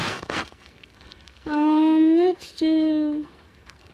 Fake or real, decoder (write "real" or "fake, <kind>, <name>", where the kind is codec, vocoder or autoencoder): fake, codec, SNAC